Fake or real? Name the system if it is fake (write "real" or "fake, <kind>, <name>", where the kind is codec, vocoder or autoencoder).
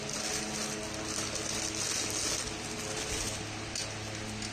real